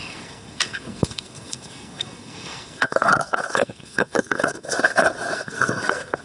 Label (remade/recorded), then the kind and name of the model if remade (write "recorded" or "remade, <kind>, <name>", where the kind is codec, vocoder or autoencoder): remade, codec, SNAC